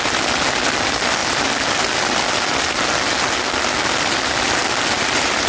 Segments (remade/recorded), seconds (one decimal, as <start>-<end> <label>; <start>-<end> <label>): 0.0-5.5 recorded